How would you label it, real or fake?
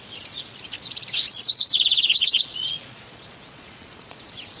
fake